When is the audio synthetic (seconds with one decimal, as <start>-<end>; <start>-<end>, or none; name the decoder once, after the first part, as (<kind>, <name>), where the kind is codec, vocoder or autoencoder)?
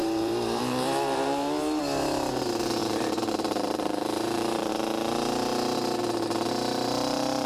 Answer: 0.0-1.8 (vocoder, BigVGAN v2); 2.8-4.7